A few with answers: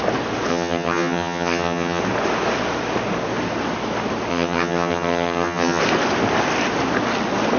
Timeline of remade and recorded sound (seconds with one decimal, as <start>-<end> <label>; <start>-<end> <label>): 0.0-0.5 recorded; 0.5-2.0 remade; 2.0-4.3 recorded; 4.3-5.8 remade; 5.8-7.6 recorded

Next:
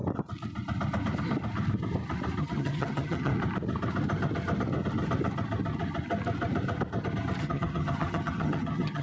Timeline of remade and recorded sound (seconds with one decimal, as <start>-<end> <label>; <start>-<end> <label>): 0.0-2.4 recorded; 2.4-3.3 remade; 3.3-7.4 recorded; 7.4-9.0 remade

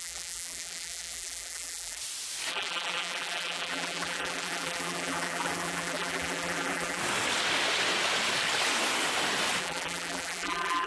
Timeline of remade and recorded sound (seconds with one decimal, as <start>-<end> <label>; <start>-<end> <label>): 0.0-2.0 remade; 2.0-2.5 recorded; 2.5-7.0 remade; 7.0-9.6 recorded; 9.6-10.9 remade

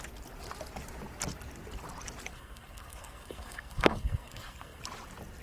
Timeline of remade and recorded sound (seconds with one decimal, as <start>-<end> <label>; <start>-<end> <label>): 0.0-2.3 recorded; 2.3-4.8 remade; 4.8-5.4 recorded